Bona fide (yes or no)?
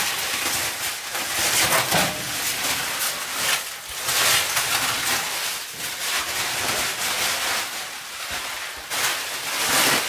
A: yes